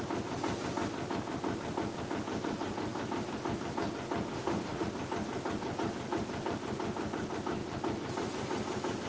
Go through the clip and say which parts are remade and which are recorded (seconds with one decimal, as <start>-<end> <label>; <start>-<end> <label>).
0.0-4.3 recorded; 4.3-4.8 remade; 4.8-9.1 recorded